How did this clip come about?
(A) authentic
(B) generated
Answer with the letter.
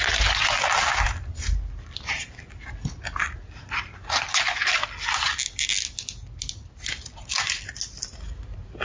A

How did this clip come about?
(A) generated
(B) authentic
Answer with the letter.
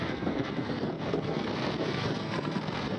A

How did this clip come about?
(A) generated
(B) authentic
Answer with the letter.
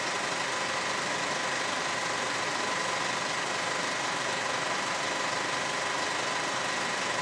B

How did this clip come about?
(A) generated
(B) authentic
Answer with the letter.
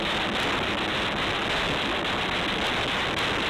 B